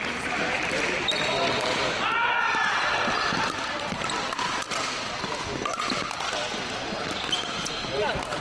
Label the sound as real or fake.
real